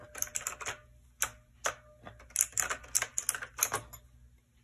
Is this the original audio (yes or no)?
yes